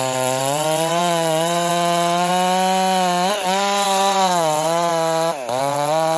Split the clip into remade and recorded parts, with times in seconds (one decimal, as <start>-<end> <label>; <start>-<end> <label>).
0.0-2.3 remade; 2.3-3.3 recorded; 3.3-4.9 remade; 4.9-5.6 recorded; 5.6-6.2 remade